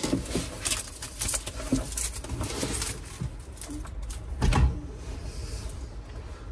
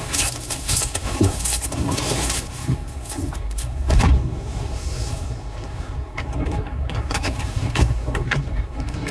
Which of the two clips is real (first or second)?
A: first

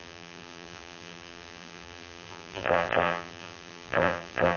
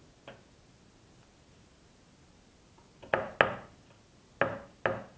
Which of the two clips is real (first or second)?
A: second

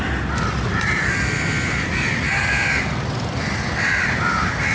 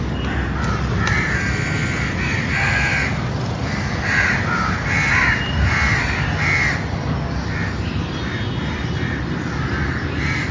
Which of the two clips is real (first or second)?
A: second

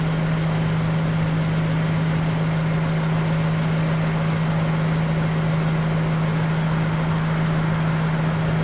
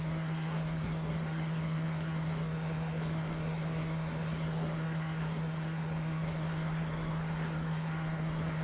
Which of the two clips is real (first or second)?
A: first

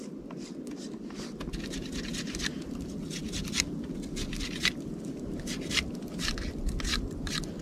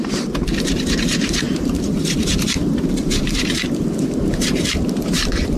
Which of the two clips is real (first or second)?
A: first